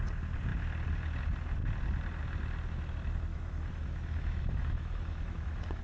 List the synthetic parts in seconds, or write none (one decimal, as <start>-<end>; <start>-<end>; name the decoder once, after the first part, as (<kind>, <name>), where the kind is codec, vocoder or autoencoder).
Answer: 3.3-5.8 (autoencoder, DAC-VAE)